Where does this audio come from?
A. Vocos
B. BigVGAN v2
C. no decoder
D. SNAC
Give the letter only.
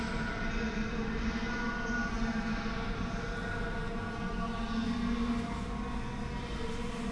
C